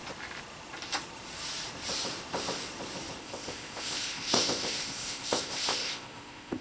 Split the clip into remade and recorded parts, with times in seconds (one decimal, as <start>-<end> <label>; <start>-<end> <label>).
0.0-3.2 recorded; 3.2-6.6 remade